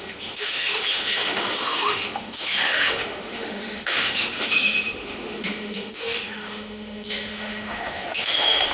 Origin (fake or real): fake